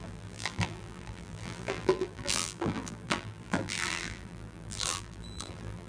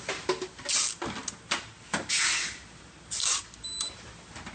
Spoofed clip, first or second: first